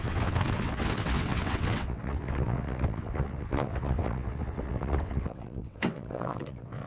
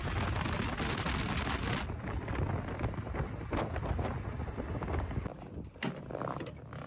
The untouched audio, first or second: second